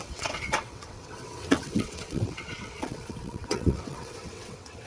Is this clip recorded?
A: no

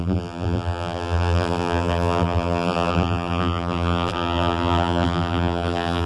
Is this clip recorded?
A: no